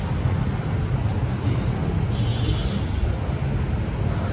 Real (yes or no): yes